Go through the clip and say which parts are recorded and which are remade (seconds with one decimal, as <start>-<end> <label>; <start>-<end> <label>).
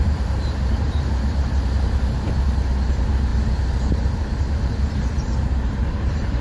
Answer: 0.0-6.4 remade